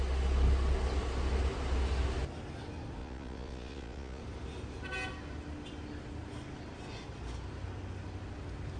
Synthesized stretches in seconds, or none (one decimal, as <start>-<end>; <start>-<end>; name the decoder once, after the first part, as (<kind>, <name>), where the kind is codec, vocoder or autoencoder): 3.0-4.2 (vocoder, Vocos)